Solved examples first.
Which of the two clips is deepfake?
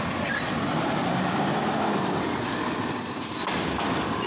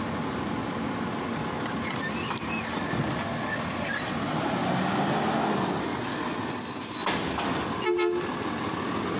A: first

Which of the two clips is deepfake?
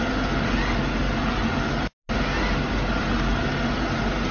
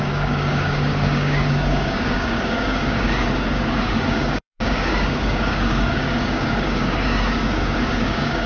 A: second